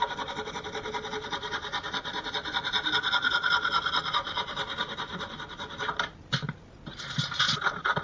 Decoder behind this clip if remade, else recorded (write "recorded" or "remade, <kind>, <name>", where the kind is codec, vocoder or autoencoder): recorded